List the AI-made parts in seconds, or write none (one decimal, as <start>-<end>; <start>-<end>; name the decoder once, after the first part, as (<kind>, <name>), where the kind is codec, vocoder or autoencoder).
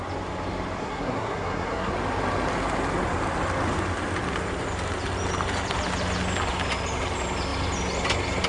0.8-1.9 (codec, SNAC)